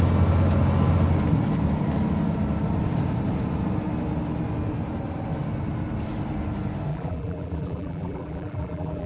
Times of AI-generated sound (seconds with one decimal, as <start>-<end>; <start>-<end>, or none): 6.9-9.1